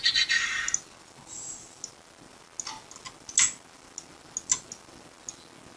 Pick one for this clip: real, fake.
real